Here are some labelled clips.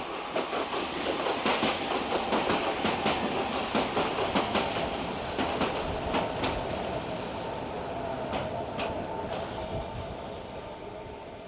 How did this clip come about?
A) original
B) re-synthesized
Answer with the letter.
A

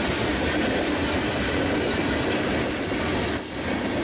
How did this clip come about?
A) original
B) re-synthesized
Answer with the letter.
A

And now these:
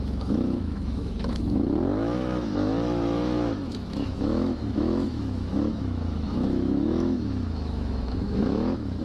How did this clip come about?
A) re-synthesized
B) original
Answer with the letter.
A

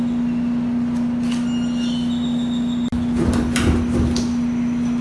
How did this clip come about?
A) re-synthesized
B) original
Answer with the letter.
B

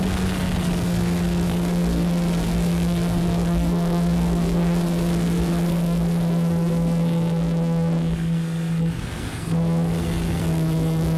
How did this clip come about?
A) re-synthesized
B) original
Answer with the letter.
A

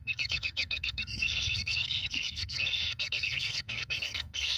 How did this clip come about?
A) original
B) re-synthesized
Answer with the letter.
B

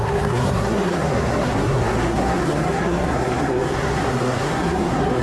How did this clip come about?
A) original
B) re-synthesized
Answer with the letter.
B